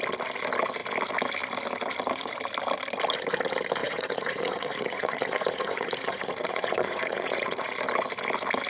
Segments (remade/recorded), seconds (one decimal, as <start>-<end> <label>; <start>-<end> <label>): 0.0-3.8 recorded; 3.8-7.7 remade; 7.7-8.7 recorded